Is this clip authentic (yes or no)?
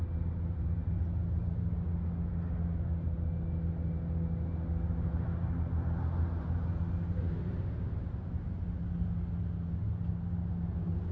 yes